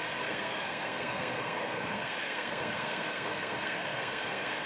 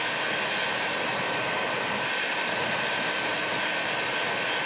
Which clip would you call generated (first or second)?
first